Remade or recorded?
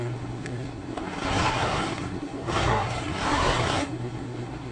remade